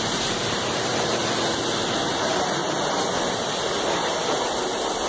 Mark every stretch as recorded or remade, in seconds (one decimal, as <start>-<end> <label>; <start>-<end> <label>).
0.0-1.2 remade; 1.2-1.8 recorded; 1.8-2.6 remade; 2.6-3.4 recorded; 3.4-5.1 remade